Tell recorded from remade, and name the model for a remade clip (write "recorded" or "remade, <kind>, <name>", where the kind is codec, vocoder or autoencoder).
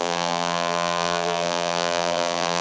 remade, vocoder, BigVGAN v2